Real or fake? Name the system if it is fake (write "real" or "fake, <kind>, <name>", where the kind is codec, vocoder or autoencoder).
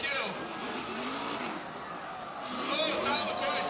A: real